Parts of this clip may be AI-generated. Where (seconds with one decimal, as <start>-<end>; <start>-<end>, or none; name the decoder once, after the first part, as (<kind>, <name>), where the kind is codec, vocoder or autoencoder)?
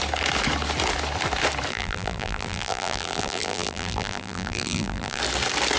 1.7-5.2 (vocoder, BigVGAN v2)